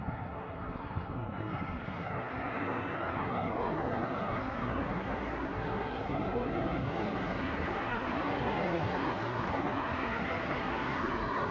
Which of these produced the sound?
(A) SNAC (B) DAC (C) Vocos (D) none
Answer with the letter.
A